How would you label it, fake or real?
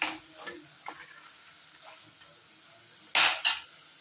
real